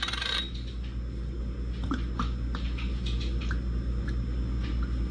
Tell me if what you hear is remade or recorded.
recorded